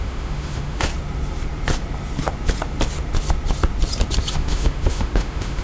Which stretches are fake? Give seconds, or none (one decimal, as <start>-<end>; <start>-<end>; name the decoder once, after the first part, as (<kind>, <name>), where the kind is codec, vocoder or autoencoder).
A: 0.0-0.9 (autoencoder, DAC-VAE); 4.3-5.6